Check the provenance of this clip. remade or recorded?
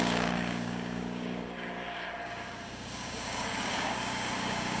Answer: remade